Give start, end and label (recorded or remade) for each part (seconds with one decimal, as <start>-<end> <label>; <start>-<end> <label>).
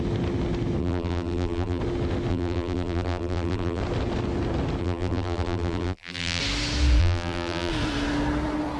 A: 0.0-0.8 recorded; 0.8-1.8 remade; 1.8-2.3 recorded; 2.3-3.8 remade; 3.8-4.8 recorded; 4.8-6.4 remade; 6.4-7.0 recorded; 7.0-7.7 remade; 7.7-8.8 recorded